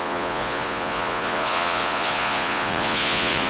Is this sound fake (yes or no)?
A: yes